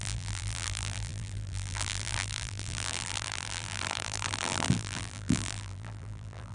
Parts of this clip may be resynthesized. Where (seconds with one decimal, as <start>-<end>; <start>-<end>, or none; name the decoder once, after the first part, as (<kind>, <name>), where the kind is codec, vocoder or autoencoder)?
0.0-6.5 (vocoder, BigVGAN v2)

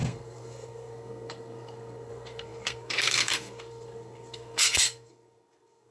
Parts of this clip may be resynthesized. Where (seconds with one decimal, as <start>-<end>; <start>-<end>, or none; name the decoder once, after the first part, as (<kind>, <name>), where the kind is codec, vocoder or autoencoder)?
0.0-5.9 (codec, SNAC)

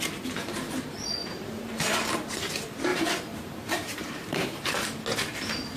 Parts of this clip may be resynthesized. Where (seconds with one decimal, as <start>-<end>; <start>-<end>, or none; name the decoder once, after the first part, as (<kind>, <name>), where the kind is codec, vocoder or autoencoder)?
1.2-2.3 (vocoder, BigVGAN v2); 2.9-4.7

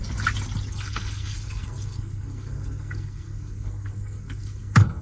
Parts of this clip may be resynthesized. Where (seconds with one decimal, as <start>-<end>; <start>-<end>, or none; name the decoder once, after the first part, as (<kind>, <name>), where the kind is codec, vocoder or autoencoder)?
0.7-5.0 (codec, SNAC)

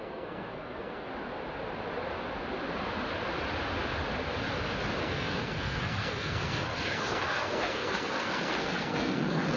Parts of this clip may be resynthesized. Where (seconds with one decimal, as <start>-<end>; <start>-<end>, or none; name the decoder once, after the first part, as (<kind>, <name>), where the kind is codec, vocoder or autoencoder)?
0.0-1.1 (codec, SNAC); 5.0-9.6